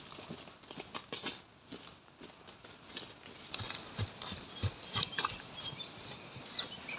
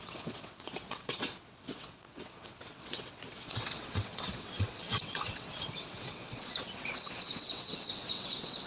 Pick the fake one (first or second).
second